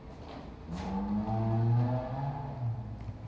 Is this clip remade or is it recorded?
recorded